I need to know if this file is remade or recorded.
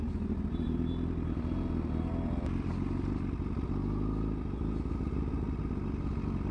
recorded